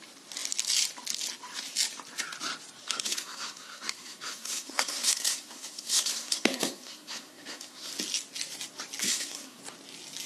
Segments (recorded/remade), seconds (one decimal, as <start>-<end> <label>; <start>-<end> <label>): 0.0-2.8 recorded; 2.8-7.9 remade; 7.9-9.0 recorded; 9.0-9.6 remade; 9.6-10.3 recorded